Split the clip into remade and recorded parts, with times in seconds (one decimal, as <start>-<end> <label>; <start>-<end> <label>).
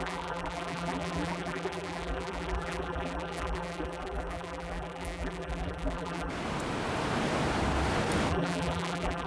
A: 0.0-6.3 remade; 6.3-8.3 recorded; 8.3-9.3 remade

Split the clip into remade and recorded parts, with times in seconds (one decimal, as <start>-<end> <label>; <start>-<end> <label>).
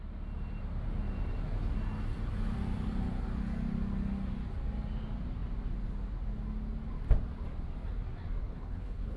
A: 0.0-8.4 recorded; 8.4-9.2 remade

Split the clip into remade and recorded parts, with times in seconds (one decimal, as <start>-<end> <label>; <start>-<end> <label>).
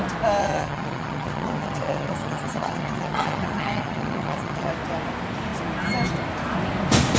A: 0.0-0.4 recorded; 0.4-4.7 remade; 4.7-7.2 recorded